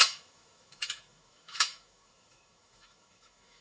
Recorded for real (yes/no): no